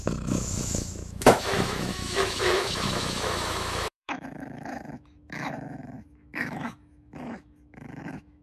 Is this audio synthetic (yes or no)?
yes